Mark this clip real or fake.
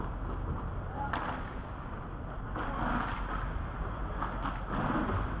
real